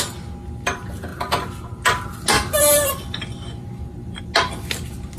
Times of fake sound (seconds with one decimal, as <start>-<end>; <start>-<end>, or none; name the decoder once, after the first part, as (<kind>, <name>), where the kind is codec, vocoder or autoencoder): none